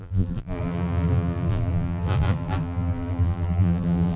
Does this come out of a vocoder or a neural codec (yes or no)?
yes